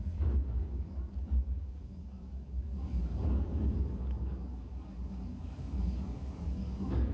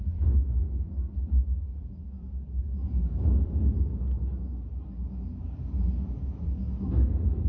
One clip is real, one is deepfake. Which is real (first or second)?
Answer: second